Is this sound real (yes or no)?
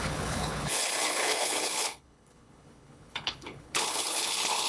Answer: no